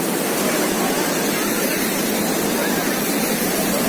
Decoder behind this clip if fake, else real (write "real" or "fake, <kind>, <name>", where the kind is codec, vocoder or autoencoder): real